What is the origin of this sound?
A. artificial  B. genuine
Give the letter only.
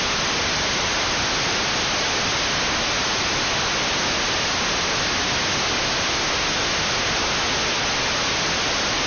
B